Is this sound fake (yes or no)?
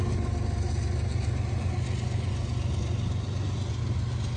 no